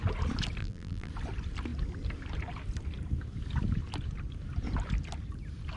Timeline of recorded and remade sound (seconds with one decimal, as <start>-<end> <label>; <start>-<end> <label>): 0.0-0.6 recorded; 0.6-1.1 remade; 1.1-5.8 recorded